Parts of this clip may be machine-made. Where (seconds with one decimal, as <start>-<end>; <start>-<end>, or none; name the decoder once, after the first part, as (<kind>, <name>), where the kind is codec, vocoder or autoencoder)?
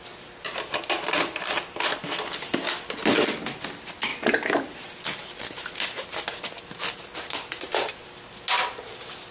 none